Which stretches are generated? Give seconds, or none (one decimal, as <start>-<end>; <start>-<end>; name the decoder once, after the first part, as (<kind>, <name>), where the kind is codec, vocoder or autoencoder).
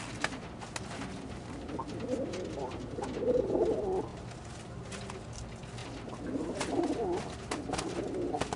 none